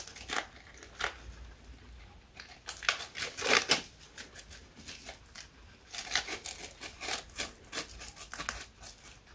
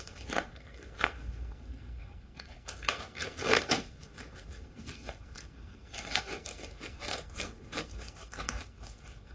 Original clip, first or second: first